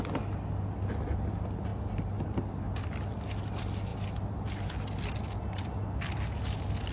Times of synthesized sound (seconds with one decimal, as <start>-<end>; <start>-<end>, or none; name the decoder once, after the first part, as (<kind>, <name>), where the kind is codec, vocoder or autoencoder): none